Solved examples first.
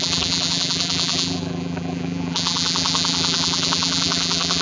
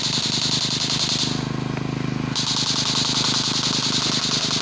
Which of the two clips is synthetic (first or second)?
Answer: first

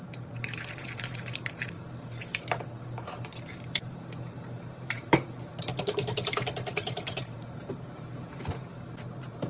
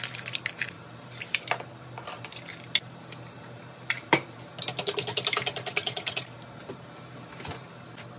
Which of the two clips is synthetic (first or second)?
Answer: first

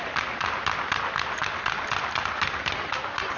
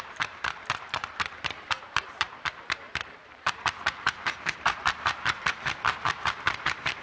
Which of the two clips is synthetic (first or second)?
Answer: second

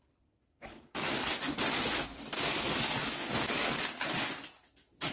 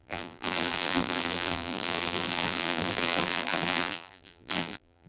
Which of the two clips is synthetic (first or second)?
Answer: second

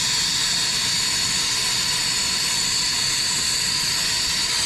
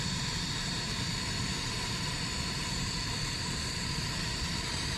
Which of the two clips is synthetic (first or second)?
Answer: second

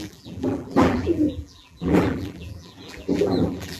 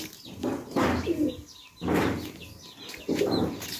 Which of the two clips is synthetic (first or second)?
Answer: first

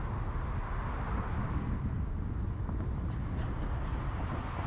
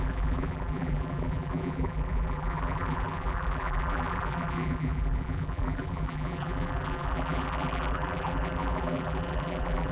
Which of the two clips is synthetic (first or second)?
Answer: second